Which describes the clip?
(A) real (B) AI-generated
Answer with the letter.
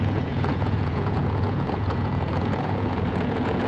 B